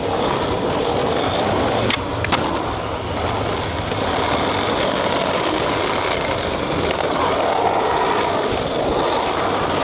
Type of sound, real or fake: real